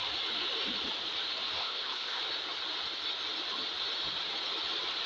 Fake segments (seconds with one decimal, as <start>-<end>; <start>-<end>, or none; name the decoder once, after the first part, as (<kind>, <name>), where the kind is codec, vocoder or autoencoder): 1.6-2.2 (codec, ZipCodec)